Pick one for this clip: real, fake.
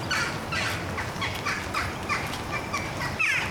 fake